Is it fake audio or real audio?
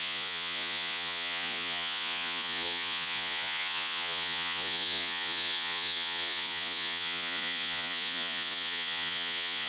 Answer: fake